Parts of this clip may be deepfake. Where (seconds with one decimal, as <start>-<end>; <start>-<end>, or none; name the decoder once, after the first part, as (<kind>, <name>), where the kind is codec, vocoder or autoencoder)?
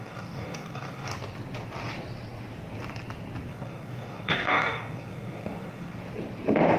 0.0-1.1 (codec, DAC); 3.5-6.0